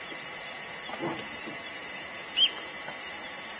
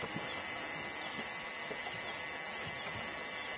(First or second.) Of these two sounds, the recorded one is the second